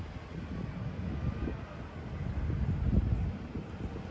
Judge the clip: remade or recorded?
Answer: recorded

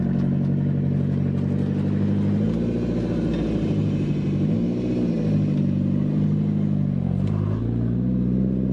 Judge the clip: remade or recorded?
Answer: recorded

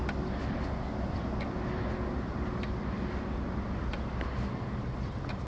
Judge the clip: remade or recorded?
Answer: recorded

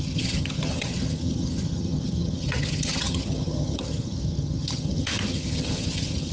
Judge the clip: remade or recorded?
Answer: remade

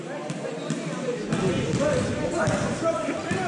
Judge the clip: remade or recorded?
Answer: remade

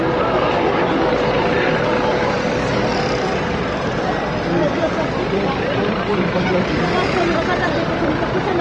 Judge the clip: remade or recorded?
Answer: recorded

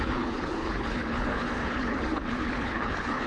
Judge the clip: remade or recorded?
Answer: remade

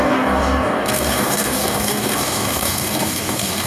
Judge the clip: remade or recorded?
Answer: remade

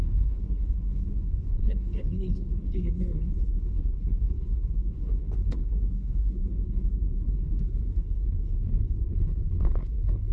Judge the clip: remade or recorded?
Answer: remade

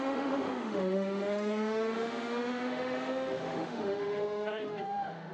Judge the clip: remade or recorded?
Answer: remade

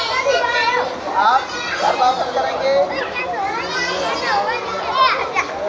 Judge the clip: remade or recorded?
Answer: recorded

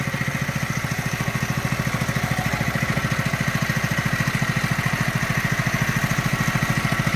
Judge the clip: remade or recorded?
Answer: recorded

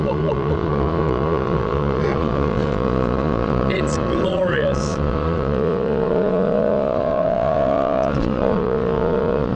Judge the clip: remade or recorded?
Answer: remade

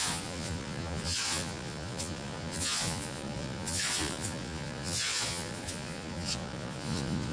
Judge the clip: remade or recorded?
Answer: remade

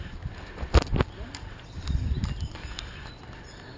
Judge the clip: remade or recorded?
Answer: recorded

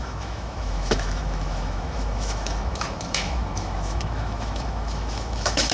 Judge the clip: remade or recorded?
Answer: remade